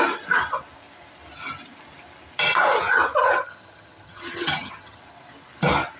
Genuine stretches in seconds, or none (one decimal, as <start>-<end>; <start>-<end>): 0.0-3.2; 5.0-6.0